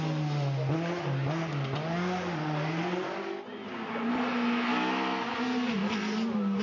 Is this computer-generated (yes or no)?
no